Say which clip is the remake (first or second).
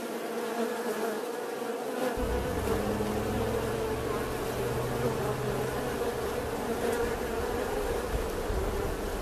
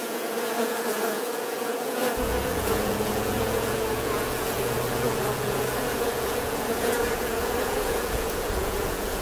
second